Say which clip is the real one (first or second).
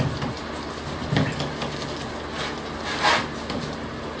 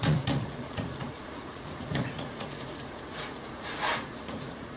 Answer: first